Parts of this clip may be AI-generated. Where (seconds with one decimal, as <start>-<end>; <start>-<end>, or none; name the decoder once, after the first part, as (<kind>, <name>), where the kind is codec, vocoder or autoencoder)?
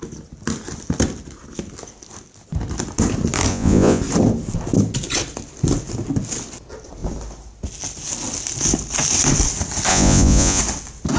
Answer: 3.5-4.0 (vocoder, Vocos); 9.9-10.6